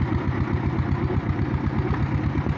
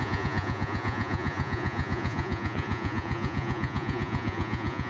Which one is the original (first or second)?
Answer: first